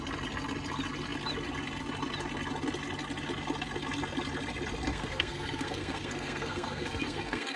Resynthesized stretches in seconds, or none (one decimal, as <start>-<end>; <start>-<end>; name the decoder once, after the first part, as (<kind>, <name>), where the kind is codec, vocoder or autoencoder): 4.9-7.6 (codec, SNAC)